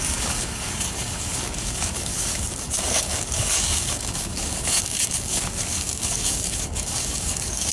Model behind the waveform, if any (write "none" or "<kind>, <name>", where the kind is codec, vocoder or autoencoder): codec, DAC